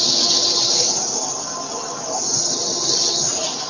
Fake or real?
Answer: real